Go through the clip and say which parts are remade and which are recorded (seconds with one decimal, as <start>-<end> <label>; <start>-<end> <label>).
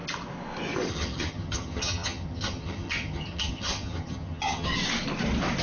0.0-0.9 recorded; 0.9-4.7 remade; 4.7-5.6 recorded